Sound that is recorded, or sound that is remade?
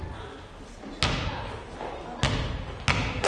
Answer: recorded